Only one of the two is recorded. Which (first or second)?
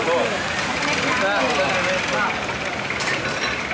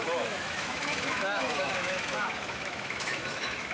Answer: first